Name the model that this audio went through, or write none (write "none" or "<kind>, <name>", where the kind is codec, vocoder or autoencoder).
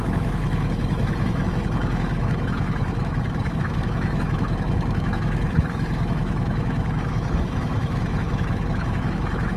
autoencoder, DAC-VAE